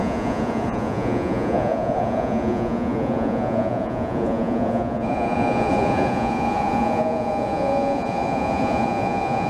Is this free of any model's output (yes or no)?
no